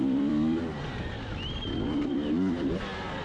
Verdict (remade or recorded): remade